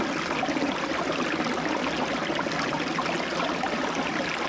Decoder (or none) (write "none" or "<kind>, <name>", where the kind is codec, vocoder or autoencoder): none